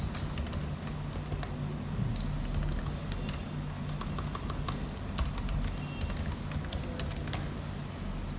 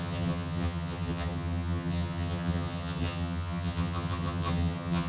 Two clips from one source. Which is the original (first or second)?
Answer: first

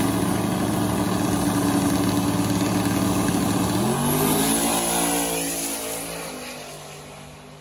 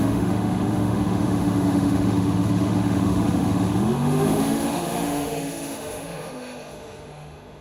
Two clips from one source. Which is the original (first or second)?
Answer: first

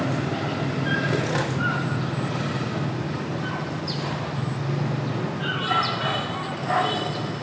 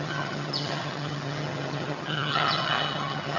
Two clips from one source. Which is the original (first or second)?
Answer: first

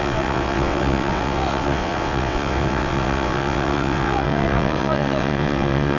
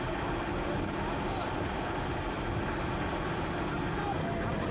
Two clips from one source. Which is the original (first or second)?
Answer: second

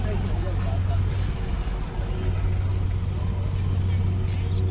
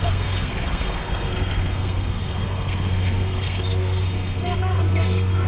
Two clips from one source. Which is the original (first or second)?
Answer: first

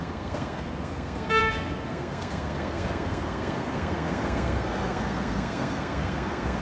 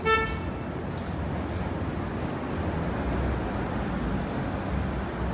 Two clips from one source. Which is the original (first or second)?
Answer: second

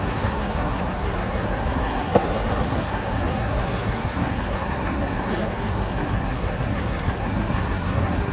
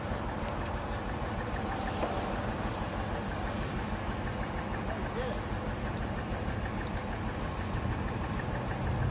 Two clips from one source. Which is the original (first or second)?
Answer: second